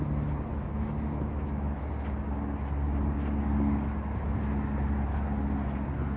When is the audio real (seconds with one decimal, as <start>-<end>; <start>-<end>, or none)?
0.0-0.5; 1.8-6.2